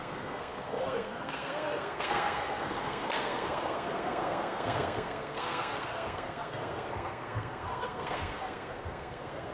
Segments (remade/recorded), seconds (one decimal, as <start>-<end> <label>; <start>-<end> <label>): 0.0-9.5 remade